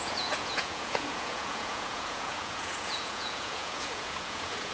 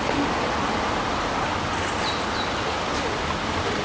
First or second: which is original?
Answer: second